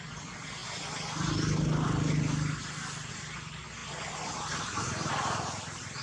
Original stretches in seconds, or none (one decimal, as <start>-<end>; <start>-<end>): 0.0-6.0